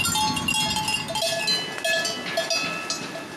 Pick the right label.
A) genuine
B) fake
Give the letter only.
A